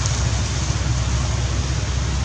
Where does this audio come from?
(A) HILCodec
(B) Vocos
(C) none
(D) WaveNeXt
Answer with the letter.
C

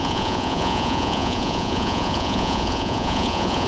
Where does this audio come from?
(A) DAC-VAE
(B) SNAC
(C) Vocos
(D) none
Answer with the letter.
C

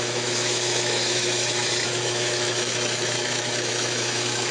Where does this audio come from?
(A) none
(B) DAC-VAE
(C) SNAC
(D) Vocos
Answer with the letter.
B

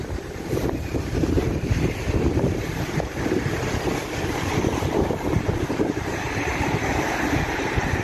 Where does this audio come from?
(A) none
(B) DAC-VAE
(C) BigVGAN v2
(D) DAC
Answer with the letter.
C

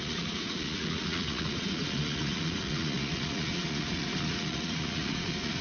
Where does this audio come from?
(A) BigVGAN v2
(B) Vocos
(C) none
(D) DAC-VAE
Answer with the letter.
B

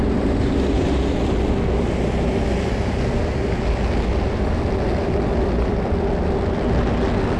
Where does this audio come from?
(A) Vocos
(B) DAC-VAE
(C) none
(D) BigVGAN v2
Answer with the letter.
C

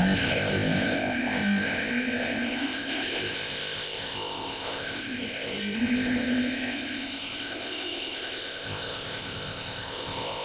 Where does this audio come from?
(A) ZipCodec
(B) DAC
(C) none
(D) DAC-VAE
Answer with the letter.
A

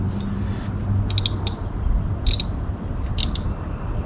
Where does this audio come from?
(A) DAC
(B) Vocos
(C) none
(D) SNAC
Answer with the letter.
C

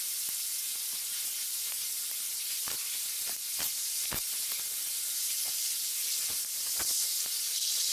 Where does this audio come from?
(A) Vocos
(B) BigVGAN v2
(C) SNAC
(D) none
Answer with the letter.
B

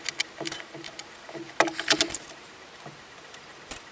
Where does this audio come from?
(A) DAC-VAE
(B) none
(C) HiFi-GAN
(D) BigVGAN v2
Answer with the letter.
B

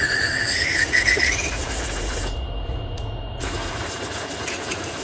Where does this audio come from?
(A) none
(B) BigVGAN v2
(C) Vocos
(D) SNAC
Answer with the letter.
C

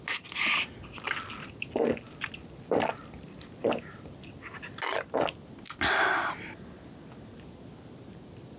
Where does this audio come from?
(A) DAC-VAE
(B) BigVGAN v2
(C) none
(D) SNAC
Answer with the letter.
C